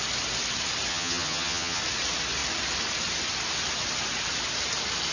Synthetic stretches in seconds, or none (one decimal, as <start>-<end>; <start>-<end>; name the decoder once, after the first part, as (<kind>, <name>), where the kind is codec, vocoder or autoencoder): 0.9-1.8 (vocoder, HiFi-GAN)